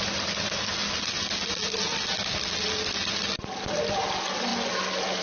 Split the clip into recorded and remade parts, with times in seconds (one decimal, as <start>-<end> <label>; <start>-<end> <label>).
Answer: 0.0-0.8 remade; 0.8-3.9 recorded; 3.9-4.5 remade; 4.5-5.2 recorded